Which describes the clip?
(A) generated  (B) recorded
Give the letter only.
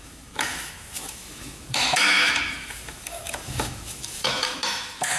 A